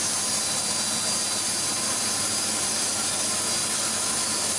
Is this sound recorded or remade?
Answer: recorded